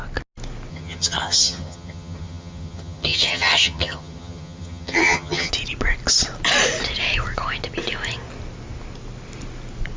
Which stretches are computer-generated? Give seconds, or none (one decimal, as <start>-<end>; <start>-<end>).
0.7-5.5